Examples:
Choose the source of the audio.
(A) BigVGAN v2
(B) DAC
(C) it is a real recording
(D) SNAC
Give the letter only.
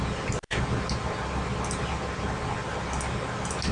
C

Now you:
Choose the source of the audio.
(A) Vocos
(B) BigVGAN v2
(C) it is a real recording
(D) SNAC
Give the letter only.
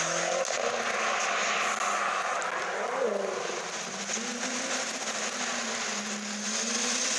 C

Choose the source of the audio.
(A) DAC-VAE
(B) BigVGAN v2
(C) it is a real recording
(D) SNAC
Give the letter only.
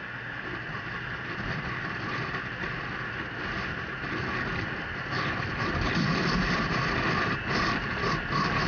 C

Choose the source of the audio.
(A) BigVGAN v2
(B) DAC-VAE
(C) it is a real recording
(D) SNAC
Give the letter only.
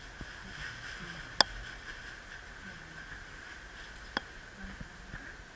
C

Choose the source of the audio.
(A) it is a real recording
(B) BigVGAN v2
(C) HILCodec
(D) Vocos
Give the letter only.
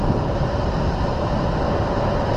A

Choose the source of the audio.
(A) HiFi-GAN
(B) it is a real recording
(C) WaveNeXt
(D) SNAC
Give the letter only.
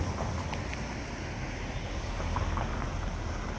B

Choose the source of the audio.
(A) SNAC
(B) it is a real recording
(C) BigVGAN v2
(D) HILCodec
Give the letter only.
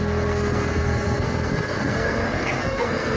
A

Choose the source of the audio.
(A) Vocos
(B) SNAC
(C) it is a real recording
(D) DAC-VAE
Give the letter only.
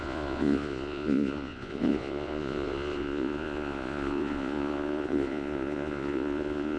A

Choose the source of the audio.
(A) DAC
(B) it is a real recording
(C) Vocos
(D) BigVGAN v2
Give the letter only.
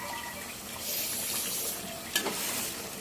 B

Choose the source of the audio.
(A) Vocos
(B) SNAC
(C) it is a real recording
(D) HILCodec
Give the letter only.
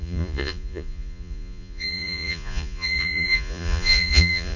A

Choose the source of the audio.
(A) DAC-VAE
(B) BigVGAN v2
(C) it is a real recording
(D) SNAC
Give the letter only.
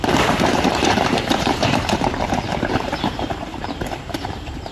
B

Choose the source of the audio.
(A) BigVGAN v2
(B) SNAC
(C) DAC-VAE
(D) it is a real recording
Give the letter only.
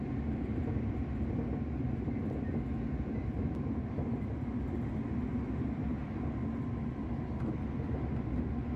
D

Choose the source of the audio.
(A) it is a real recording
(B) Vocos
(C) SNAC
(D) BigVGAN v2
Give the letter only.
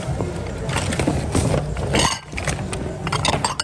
A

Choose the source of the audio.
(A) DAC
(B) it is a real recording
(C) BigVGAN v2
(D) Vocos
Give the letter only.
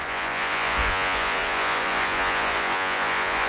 D